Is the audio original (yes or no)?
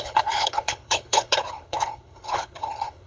no